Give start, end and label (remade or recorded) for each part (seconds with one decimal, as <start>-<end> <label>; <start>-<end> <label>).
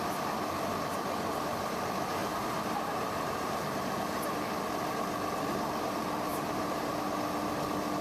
0.0-2.2 recorded; 2.2-4.0 remade; 4.0-6.3 recorded; 6.3-6.9 remade; 6.9-8.0 recorded